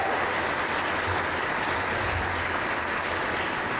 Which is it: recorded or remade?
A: recorded